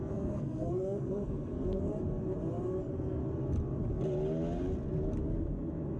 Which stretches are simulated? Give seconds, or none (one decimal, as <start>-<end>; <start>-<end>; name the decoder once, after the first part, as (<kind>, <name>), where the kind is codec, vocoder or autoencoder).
0.0-1.9 (codec, SNAC); 2.8-3.2